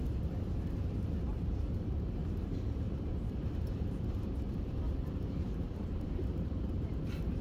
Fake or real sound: fake